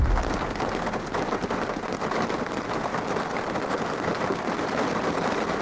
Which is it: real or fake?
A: real